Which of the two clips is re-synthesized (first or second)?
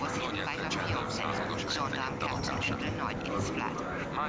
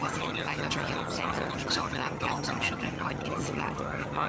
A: second